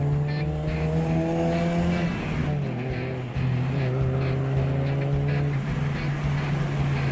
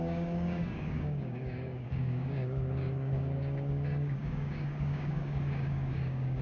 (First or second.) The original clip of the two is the first